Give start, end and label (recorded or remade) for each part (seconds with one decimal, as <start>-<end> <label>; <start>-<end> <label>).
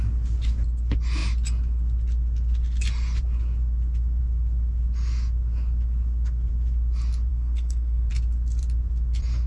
0.0-7.3 recorded; 7.3-8.1 remade; 8.1-9.5 recorded